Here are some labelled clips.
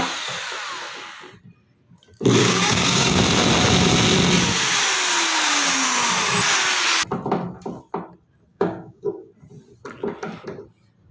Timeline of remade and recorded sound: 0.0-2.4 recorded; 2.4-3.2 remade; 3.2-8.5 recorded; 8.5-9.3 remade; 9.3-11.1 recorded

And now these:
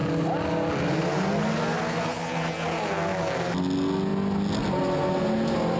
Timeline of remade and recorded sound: 0.0-5.8 recorded

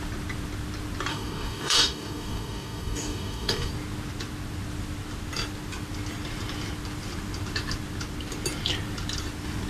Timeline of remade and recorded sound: 0.0-1.1 recorded; 1.1-3.7 remade; 3.7-9.7 recorded